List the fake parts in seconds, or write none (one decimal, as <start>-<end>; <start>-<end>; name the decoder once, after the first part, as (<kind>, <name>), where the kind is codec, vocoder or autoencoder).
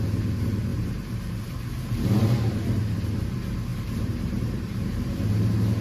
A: 0.7-2.8 (vocoder, BigVGAN v2); 3.7-5.1